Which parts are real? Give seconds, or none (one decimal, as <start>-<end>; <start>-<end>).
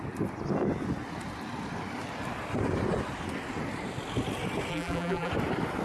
0.0-4.7; 5.3-5.8